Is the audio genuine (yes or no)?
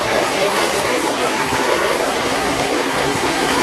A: no